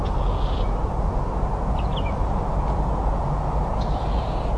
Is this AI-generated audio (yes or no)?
no